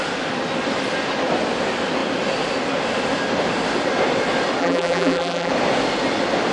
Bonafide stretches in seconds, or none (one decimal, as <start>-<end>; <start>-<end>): 0.0-4.6; 5.5-6.5